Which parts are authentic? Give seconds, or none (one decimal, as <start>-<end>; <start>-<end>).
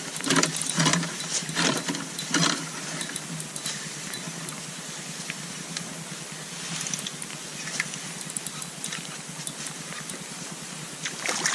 0.0-0.9; 1.8-11.5